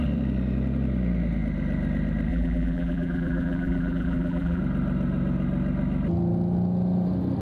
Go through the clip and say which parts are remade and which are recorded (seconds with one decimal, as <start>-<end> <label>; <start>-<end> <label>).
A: 0.0-2.3 recorded; 2.3-4.6 remade; 4.6-7.4 recorded